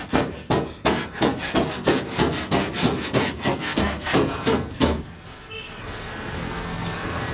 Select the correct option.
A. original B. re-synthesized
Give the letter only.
B